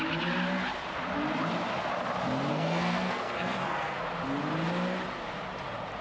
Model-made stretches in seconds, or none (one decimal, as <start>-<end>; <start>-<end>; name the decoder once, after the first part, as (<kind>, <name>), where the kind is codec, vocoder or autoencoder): 2.5-4.0 (codec, SNAC)